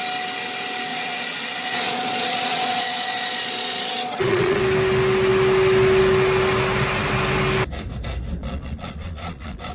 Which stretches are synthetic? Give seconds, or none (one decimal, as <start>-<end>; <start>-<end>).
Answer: 0.9-4.6; 8.4-9.7